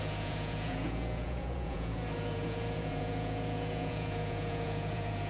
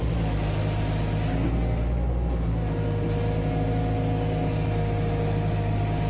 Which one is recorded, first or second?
second